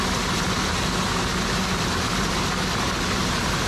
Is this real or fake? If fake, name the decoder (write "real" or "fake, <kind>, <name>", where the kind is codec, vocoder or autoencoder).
real